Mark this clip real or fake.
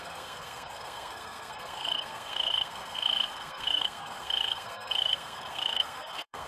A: fake